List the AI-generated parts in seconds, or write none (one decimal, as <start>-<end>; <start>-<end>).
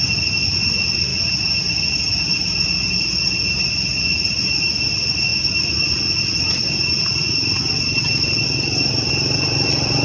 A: none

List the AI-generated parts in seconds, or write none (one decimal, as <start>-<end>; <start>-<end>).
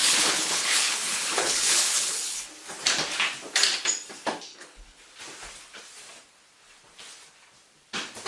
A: 0.0-2.5; 4.5-5.0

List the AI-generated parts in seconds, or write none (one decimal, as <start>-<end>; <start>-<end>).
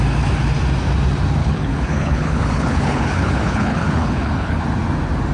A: 1.4-4.6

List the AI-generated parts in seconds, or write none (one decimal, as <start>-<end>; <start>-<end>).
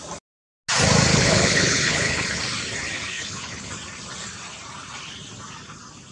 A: 1.1-2.4; 3.1-3.7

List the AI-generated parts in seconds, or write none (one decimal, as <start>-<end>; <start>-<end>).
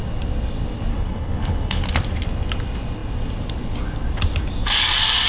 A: 0.9-1.8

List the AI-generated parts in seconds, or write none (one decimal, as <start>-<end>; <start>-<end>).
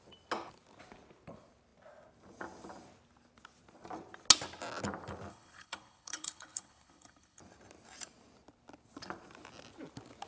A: 5.3-7.4